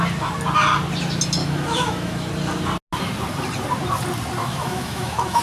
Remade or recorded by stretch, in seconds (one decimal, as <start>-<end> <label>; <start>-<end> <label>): 0.0-1.4 recorded; 1.4-2.3 remade; 2.3-4.4 recorded; 4.4-5.4 remade